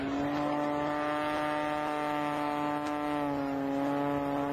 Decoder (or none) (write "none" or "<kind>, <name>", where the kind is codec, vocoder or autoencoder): none